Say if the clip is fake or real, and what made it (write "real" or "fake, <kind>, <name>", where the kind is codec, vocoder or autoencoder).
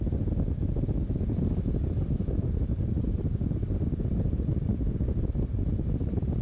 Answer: real